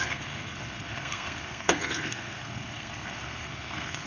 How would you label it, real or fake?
fake